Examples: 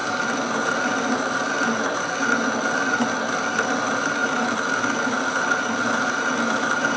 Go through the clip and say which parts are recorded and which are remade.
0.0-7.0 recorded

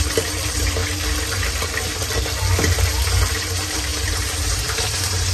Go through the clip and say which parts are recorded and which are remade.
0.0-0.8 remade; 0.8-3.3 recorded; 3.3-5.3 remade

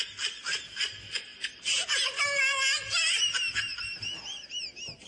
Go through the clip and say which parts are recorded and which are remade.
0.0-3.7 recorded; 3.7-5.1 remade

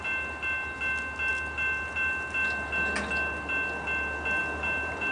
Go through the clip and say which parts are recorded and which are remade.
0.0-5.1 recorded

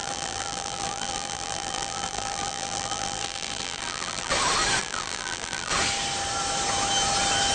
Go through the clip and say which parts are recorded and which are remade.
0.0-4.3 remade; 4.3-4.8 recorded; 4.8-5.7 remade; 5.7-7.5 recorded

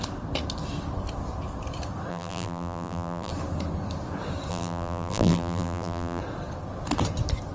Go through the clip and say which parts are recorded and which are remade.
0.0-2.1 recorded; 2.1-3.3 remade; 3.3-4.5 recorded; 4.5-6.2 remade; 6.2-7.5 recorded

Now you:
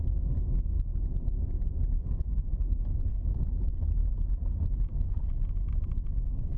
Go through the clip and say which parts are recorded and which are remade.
0.0-0.9 recorded; 0.9-3.1 remade; 3.1-6.6 recorded

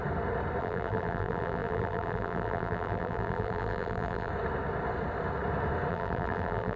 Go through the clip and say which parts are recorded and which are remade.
0.0-0.6 recorded; 0.6-4.3 remade; 4.3-5.9 recorded; 5.9-6.8 remade